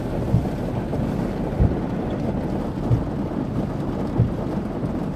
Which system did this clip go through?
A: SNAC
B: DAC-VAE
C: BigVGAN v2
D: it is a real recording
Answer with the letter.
D